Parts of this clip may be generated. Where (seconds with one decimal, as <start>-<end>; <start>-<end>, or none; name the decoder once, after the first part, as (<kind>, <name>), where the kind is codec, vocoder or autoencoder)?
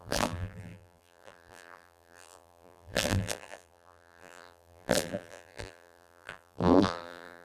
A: 0.0-7.4 (vocoder, BigVGAN v2)